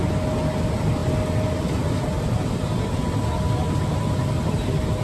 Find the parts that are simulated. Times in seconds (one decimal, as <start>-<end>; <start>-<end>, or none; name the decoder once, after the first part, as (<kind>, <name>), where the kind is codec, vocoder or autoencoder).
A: none